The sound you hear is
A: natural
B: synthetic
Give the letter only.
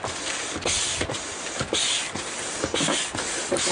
A